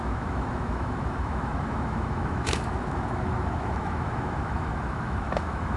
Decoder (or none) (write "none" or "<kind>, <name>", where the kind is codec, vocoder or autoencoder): autoencoder, DAC-VAE